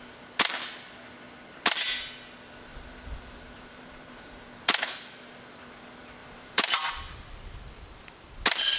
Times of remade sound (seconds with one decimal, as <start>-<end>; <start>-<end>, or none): 2.7-4.8; 6.2-6.9